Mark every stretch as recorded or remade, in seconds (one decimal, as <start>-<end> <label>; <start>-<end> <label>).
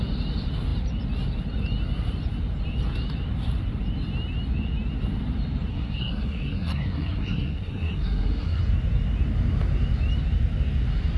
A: 0.0-5.7 recorded; 5.7-8.6 remade; 8.6-11.2 recorded